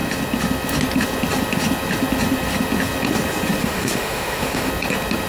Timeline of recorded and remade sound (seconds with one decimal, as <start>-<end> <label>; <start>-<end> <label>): 0.0-3.6 recorded; 3.6-4.7 remade; 4.7-5.3 recorded